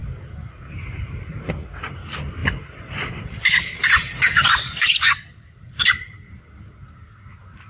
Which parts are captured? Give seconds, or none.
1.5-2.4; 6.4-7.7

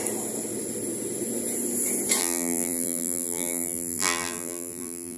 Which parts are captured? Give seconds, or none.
0.0-2.2

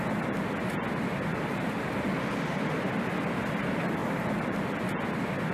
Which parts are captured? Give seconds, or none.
0.0-4.0; 4.9-5.5

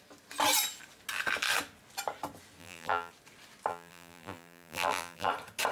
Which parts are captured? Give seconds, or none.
0.0-2.6; 3.1-3.7; 5.3-5.7

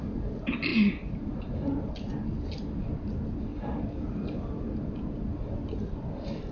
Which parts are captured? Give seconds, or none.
0.0-6.5

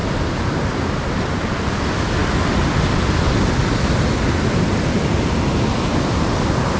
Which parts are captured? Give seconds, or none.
0.0-6.8